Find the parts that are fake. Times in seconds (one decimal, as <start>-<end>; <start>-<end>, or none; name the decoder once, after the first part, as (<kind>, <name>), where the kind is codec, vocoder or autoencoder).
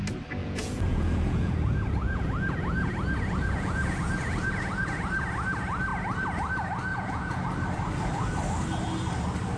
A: 0.4-2.9 (vocoder, Vocos); 3.4-5.0; 6.9-7.4